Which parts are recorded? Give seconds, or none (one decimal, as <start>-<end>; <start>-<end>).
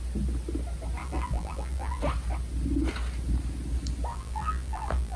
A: 0.0-1.0; 2.0-4.1